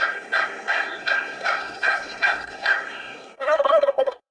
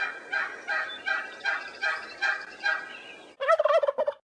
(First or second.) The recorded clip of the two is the second